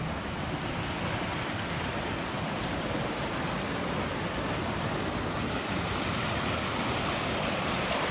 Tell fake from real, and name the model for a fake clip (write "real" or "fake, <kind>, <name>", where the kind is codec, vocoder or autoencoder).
real